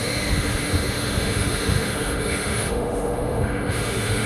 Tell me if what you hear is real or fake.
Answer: fake